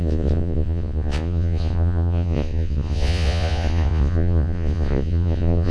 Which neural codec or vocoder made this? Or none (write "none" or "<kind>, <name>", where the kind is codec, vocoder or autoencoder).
vocoder, Vocos